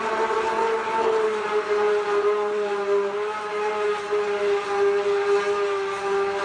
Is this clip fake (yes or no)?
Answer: no